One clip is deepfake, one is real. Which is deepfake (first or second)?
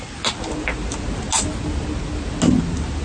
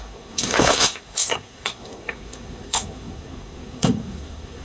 second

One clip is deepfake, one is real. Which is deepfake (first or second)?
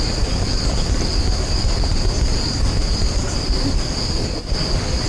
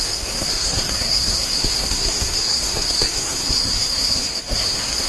second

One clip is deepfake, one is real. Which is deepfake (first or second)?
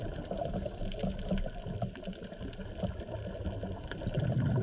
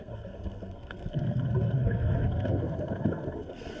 second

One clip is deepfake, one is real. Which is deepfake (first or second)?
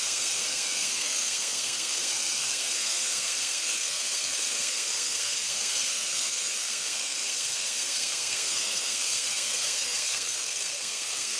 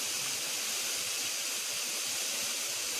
first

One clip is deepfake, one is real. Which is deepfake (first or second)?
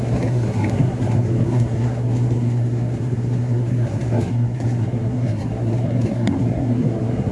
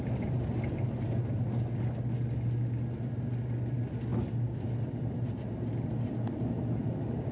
first